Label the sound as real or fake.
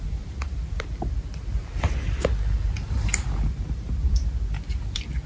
real